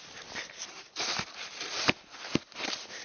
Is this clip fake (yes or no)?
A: no